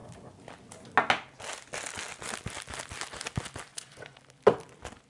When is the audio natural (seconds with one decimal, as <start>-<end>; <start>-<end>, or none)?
0.0-3.7; 4.2-5.1